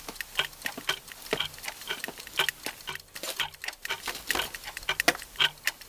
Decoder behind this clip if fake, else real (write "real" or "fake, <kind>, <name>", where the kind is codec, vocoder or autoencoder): real